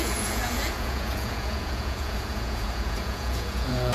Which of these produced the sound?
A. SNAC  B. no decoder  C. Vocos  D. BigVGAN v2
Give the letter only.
C